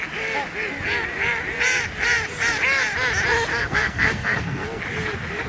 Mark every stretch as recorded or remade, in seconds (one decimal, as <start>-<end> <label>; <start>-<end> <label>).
0.0-3.5 recorded; 3.5-4.8 remade; 4.8-5.5 recorded